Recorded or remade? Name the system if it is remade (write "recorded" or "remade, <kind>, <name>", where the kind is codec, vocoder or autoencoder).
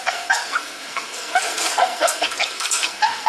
remade, codec, SNAC